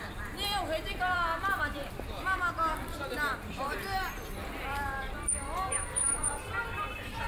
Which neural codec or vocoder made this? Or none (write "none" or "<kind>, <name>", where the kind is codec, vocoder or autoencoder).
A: vocoder, BigVGAN v2